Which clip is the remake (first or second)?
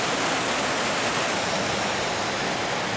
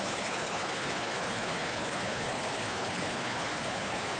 second